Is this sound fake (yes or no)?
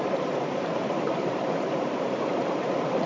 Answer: yes